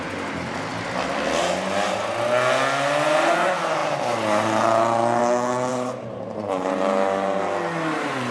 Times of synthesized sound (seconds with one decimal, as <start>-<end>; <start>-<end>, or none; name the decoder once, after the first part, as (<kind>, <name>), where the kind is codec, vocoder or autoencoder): 5.7-6.7 (vocoder, BigVGAN v2)